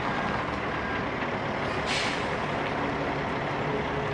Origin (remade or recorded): recorded